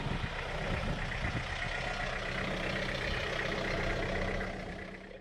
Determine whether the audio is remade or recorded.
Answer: recorded